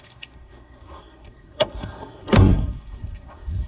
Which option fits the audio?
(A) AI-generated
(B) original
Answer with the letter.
A